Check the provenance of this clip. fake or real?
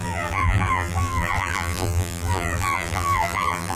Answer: fake